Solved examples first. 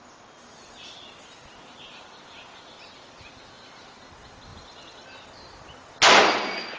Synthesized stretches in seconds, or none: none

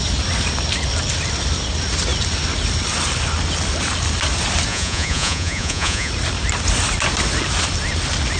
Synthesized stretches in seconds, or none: 4.7-6.1

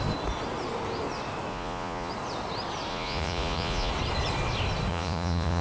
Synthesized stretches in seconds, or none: 1.5-2.1; 2.9-3.9; 4.9-5.6

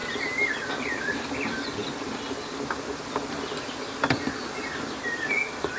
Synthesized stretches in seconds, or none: none

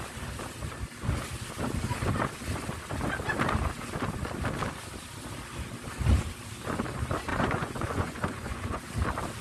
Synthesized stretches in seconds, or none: 7.3-8.8

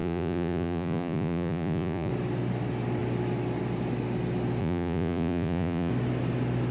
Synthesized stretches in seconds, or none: 0.0-2.1; 4.6-5.9

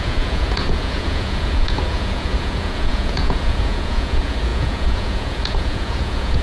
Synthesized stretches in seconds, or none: 0.0-6.4

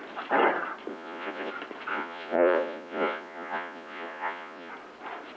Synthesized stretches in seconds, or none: 0.9-1.5; 1.9-4.7